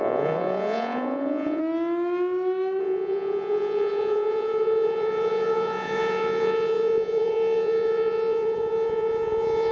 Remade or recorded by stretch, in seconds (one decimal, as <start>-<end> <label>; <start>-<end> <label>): 0.0-1.6 remade; 1.6-2.8 recorded; 2.8-9.7 remade